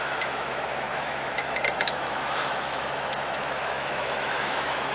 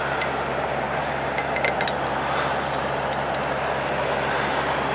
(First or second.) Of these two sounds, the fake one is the first